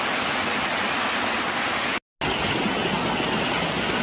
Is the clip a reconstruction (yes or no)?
no